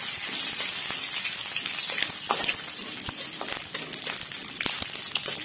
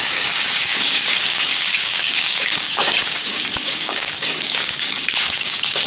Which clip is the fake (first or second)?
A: second